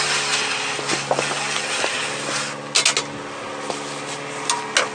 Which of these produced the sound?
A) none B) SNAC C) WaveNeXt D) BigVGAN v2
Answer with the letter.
A